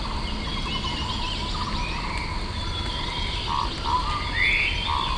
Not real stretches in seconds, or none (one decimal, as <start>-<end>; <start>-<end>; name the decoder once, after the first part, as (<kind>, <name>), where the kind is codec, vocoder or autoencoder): none